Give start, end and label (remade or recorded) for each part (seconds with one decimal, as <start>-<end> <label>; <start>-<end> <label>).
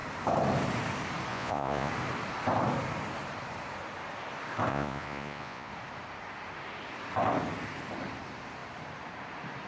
0.0-1.3 recorded; 1.3-1.9 remade; 1.9-4.7 recorded; 4.7-5.7 remade; 5.7-9.7 recorded